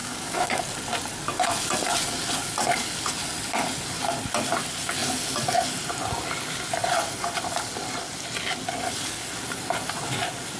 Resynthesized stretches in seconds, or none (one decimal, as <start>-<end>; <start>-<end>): 0.0-0.6